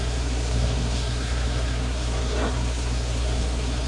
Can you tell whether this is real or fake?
fake